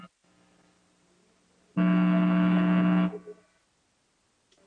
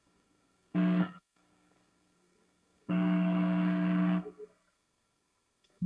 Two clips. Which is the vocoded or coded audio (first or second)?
second